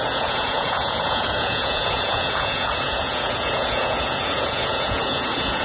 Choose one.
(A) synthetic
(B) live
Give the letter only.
A